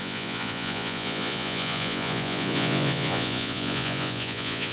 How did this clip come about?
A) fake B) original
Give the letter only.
A